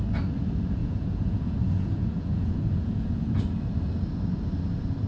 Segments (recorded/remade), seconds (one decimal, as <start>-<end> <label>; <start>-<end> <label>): 0.0-0.8 recorded; 0.8-3.4 remade; 3.4-5.1 recorded